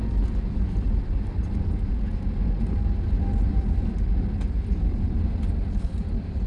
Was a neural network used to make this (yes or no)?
no